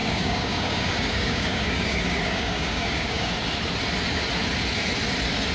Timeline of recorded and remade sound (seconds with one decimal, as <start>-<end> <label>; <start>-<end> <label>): 0.0-3.3 remade; 3.3-5.5 recorded